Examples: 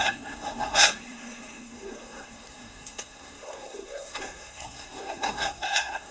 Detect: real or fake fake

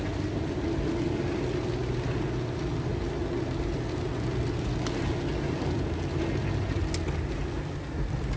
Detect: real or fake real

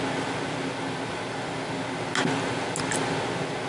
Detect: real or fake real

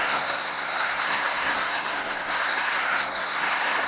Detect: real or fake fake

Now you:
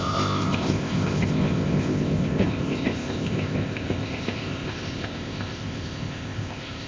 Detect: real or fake fake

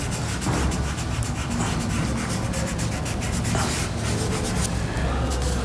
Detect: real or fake real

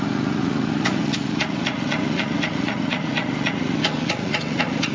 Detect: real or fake fake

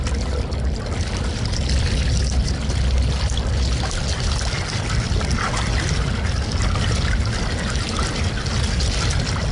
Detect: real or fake real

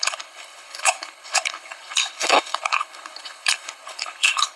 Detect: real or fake fake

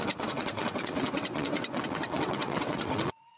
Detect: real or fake fake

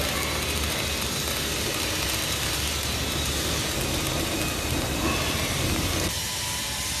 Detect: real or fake real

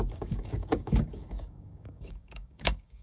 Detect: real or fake fake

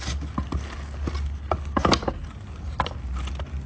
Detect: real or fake real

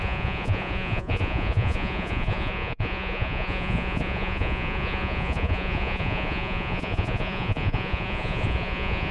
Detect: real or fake fake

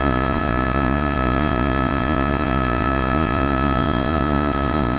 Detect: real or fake fake